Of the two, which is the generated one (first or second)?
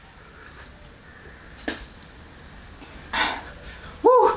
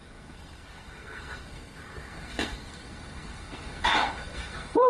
second